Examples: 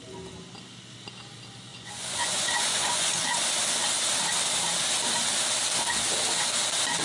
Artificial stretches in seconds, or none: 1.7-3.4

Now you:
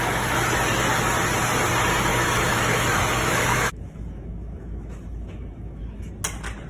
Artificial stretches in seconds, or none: 2.1-6.1